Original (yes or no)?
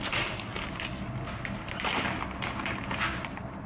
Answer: yes